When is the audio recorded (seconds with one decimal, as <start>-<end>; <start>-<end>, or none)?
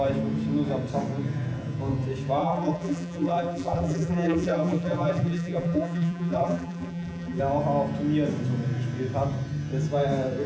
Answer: 0.0-2.4; 7.4-10.5